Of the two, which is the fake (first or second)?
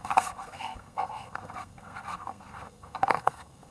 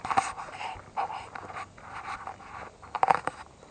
first